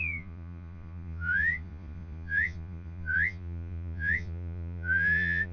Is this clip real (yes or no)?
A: no